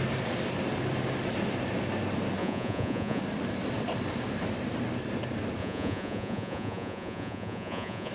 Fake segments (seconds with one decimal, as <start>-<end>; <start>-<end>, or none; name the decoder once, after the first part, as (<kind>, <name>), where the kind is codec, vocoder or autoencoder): 2.4-3.2 (vocoder, Vocos); 5.6-8.1